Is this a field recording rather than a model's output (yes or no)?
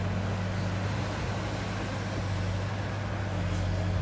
yes